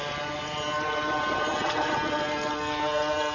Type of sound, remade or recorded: recorded